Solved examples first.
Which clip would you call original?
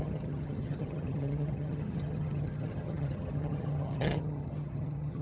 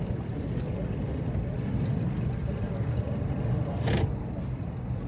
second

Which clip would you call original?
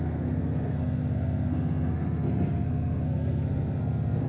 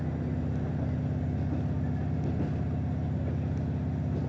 second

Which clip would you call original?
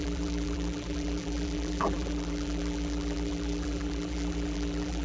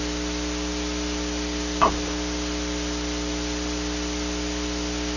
second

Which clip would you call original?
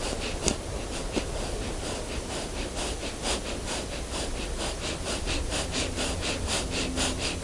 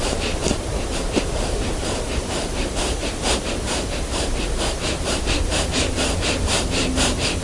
first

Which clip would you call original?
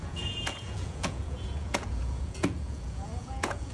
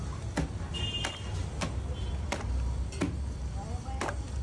second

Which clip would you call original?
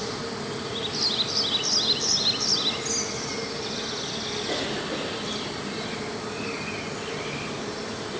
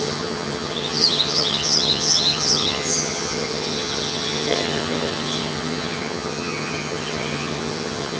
first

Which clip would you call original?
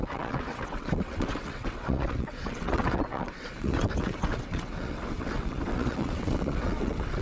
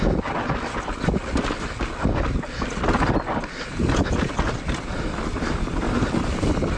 second